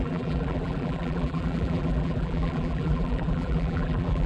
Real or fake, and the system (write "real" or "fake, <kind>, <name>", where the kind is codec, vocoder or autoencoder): fake, vocoder, BigVGAN v2